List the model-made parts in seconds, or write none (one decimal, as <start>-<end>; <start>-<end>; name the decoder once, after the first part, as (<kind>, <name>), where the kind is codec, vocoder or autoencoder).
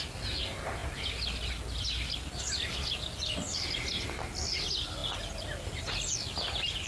none